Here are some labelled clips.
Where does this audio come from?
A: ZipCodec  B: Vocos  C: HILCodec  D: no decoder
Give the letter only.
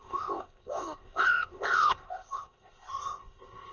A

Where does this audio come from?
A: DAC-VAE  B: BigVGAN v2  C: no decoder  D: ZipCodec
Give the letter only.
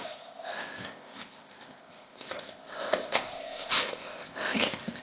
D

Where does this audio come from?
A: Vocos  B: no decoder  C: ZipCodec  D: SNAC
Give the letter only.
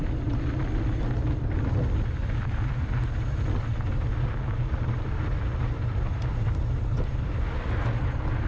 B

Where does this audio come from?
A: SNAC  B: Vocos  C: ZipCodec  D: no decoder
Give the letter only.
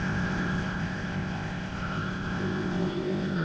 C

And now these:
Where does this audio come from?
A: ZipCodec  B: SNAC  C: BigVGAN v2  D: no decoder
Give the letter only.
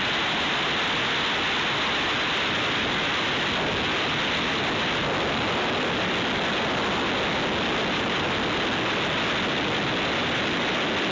D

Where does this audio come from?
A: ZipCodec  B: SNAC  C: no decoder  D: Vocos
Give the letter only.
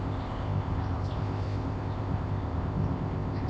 A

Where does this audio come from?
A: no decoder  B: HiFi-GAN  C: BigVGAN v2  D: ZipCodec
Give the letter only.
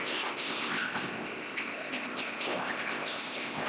D